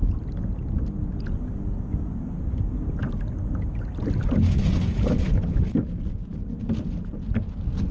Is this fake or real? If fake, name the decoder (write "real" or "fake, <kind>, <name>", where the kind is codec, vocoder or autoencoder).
real